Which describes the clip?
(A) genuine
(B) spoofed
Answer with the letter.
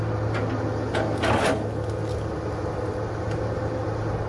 A